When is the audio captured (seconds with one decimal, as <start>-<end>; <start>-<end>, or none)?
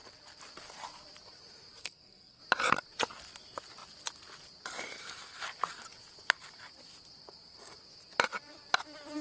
0.0-1.8; 2.4-9.2